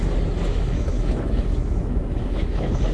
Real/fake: fake